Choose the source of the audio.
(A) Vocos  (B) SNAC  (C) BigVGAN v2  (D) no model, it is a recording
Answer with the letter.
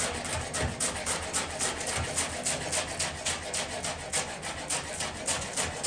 D